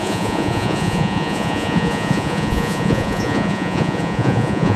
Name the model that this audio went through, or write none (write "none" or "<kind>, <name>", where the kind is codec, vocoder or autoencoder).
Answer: vocoder, Vocos